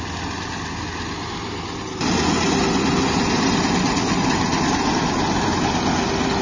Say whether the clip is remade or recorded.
recorded